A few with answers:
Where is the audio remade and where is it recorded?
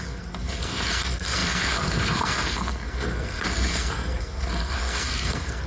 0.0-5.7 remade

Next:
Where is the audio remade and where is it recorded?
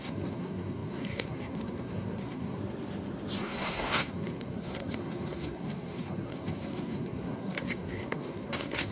0.0-2.6 remade; 2.6-3.4 recorded; 3.4-8.9 remade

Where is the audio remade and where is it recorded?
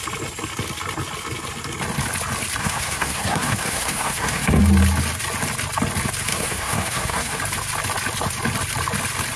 0.0-2.6 recorded; 2.6-4.6 remade; 4.6-6.3 recorded; 6.3-7.4 remade; 7.4-9.4 recorded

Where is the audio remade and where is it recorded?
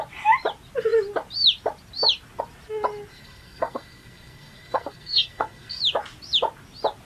0.0-3.1 recorded; 3.1-5.8 remade; 5.8-7.0 recorded